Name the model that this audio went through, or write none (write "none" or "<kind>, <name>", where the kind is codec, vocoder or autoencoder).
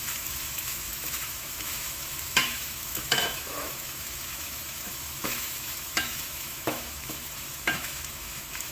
autoencoder, DAC-VAE